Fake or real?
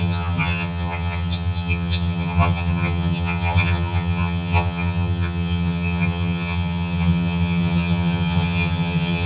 fake